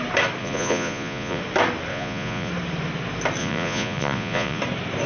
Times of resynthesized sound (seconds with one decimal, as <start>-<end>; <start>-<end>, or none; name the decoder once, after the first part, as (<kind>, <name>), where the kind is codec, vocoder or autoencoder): 0.4-1.4 (vocoder, Vocos); 1.9-2.5; 3.4-4.6